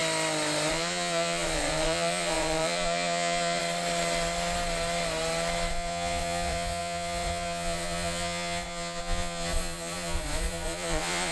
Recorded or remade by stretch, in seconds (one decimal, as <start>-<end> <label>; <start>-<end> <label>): 0.0-0.7 recorded; 0.7-3.6 remade; 3.6-5.7 recorded; 5.7-11.3 remade

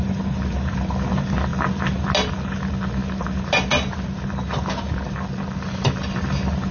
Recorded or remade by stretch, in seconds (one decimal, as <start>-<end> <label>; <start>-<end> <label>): 0.0-6.7 recorded

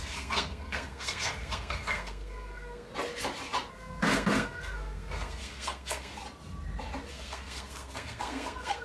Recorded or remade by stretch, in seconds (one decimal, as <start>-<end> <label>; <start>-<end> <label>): 0.0-2.9 remade; 2.9-3.7 recorded; 3.7-6.1 remade; 6.1-7.1 recorded; 7.1-8.8 remade

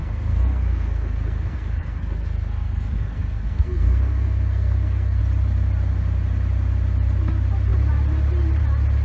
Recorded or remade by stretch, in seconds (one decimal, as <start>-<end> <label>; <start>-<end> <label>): 0.0-5.2 remade; 5.2-9.0 recorded

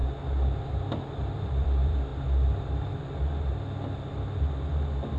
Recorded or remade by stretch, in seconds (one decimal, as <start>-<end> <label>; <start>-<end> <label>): 0.0-0.6 recorded; 0.6-2.1 remade; 2.1-5.2 recorded

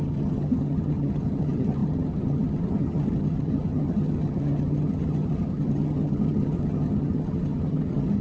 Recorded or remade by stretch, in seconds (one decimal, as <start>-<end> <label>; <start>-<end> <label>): 0.0-8.2 remade

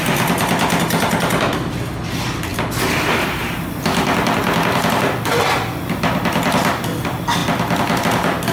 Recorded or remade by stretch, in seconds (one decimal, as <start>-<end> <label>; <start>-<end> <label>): 0.0-2.5 recorded; 2.5-6.7 remade; 6.7-8.5 recorded

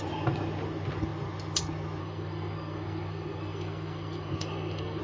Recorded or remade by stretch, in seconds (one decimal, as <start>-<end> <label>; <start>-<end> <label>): 0.0-2.0 recorded; 2.0-5.0 remade